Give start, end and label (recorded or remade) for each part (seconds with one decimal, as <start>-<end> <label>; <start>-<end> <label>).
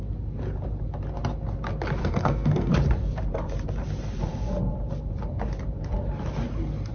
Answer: 0.0-2.0 recorded; 2.0-2.7 remade; 2.7-6.9 recorded